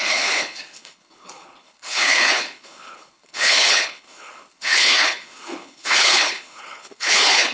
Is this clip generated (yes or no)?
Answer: yes